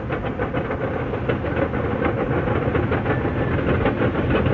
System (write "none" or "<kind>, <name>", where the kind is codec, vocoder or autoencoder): none